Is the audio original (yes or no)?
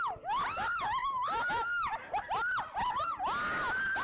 yes